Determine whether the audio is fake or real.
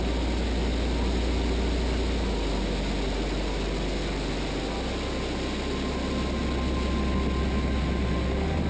real